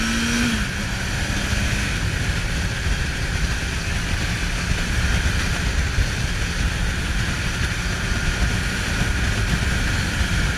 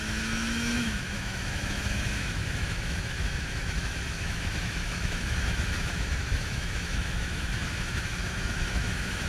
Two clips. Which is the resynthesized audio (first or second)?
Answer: second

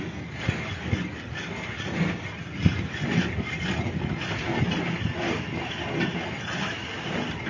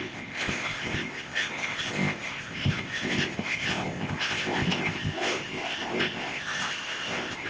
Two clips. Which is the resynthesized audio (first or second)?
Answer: second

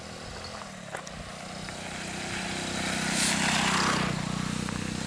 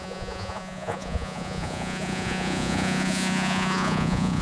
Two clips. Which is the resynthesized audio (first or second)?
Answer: second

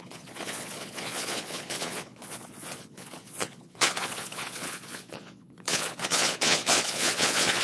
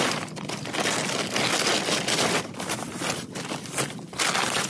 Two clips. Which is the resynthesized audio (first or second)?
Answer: first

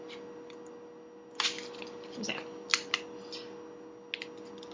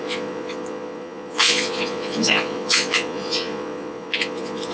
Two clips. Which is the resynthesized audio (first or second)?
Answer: second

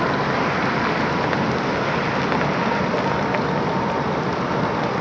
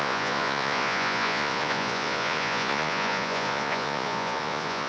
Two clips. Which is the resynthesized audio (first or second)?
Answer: second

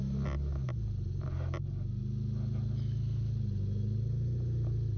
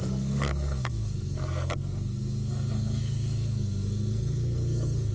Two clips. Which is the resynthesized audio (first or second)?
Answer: second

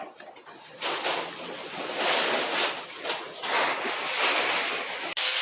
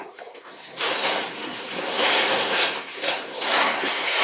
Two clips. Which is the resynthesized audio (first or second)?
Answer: second